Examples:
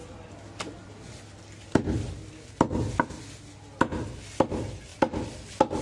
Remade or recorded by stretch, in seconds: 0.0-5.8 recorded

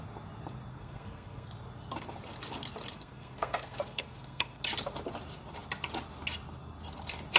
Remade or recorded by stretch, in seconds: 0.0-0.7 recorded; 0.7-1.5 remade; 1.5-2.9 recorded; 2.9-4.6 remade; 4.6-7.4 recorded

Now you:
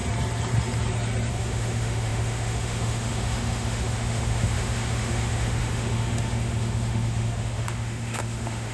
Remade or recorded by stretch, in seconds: 0.0-1.3 recorded; 1.3-8.7 remade

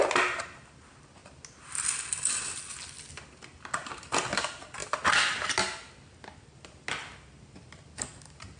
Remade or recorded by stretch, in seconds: 0.0-8.6 recorded